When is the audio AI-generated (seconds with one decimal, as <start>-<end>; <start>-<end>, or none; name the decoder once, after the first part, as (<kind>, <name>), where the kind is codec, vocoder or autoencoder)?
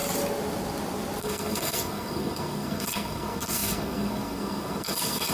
1.2-5.3 (codec, SNAC)